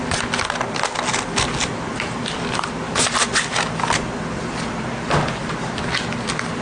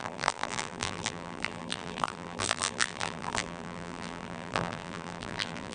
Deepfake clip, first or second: second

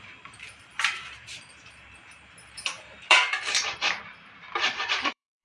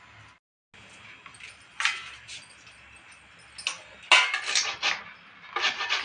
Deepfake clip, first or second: first